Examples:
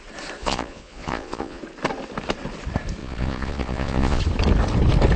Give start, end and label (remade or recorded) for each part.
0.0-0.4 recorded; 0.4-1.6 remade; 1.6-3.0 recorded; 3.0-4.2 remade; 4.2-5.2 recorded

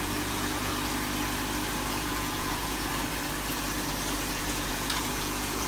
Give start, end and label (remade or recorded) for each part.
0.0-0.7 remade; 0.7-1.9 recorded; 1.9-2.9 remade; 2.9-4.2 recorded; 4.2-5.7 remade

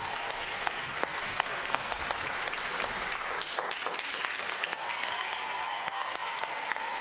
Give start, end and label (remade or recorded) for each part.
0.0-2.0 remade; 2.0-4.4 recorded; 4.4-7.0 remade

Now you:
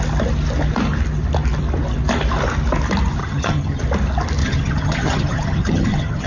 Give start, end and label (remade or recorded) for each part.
0.0-3.2 recorded; 3.2-3.8 remade; 3.8-4.4 recorded; 4.4-6.3 remade

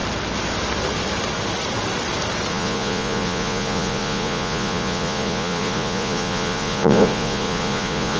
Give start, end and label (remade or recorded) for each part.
0.0-2.5 recorded; 2.5-8.2 remade

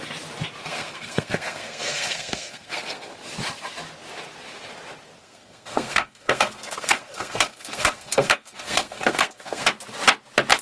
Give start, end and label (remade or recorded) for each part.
0.0-0.6 recorded; 0.6-3.1 remade; 3.1-5.2 recorded; 5.2-9.7 remade; 9.7-10.6 recorded

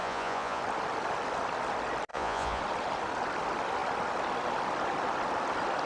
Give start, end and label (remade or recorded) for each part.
0.0-0.6 remade; 0.6-2.1 recorded; 2.1-2.6 remade; 2.6-5.9 recorded

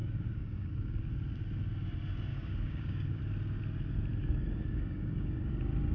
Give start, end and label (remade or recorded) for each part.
0.0-1.1 remade; 1.1-2.3 recorded; 2.3-3.2 remade; 3.2-4.2 recorded; 4.2-5.5 remade; 5.5-5.9 recorded